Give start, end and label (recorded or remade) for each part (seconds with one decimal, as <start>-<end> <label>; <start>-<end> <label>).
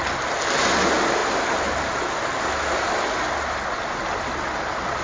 0.0-5.0 recorded